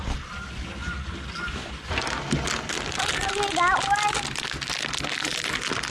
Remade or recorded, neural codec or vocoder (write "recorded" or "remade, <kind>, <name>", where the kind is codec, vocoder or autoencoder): recorded